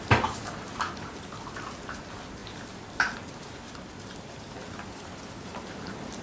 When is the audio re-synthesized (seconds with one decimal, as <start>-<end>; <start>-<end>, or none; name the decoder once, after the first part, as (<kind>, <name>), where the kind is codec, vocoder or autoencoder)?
none